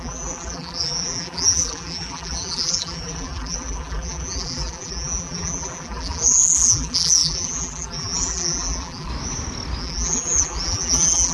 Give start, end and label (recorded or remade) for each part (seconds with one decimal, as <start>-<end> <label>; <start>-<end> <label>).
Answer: 0.0-9.1 remade; 9.1-9.8 recorded; 9.8-11.3 remade